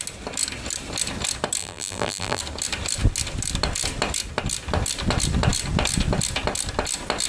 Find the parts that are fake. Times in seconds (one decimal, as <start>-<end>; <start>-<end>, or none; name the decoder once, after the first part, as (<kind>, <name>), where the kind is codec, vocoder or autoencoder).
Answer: 1.6-2.4 (vocoder, BigVGAN v2)